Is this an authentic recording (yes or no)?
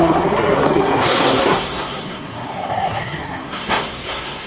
no